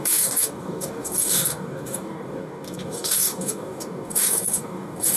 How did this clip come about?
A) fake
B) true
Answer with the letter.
A